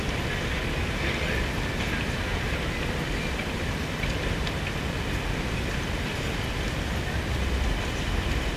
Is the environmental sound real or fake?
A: real